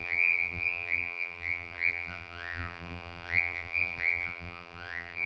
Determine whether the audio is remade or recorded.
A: remade